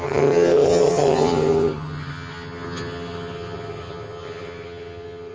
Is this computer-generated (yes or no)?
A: yes